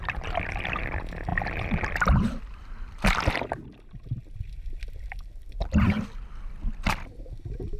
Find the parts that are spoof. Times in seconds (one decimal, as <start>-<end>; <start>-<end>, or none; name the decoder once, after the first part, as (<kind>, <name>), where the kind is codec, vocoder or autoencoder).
none

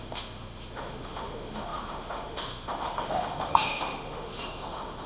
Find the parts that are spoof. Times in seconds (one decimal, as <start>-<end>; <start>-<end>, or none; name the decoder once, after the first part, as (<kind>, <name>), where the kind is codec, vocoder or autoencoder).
0.0-5.1 (autoencoder, DAC-VAE)

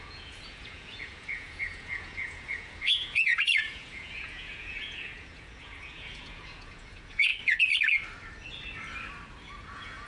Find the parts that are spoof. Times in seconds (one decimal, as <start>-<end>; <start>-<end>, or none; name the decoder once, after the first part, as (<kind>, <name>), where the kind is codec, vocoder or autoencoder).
0.0-7.3 (vocoder, Vocos); 9.6-10.1